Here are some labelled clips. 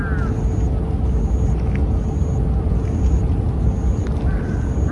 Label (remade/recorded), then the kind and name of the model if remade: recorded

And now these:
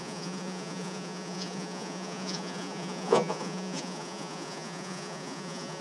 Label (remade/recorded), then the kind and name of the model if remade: remade, vocoder, Vocos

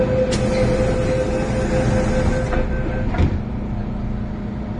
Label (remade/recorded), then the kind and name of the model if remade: recorded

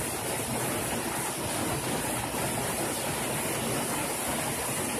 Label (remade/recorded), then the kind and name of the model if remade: recorded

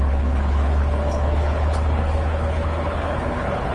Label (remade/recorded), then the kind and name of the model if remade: remade, codec, HILCodec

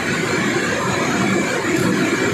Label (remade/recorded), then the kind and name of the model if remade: recorded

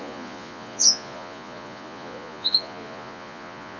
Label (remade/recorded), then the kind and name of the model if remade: remade, vocoder, Vocos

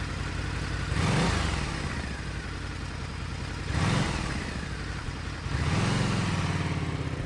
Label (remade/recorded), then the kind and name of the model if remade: recorded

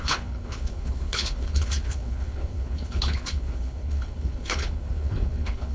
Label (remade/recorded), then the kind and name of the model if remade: remade, codec, HILCodec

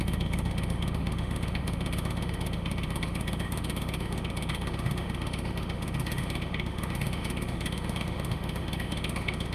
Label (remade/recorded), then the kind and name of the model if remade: remade, autoencoder, DAC-VAE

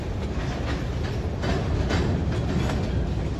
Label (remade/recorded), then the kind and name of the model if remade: recorded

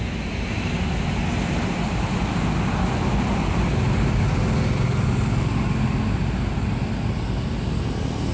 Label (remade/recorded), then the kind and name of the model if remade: recorded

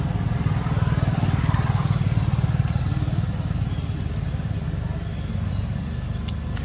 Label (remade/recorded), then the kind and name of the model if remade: recorded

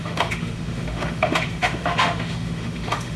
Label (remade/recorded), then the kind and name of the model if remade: remade, autoencoder, DAC-VAE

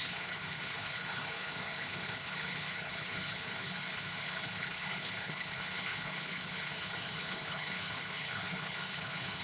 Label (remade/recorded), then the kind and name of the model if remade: remade, codec, HILCodec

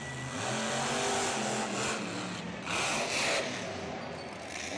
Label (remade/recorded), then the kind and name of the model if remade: recorded